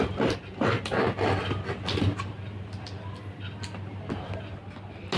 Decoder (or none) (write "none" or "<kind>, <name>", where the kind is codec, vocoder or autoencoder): none